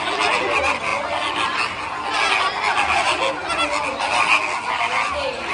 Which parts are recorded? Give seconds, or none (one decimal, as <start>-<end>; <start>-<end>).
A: 0.0-5.5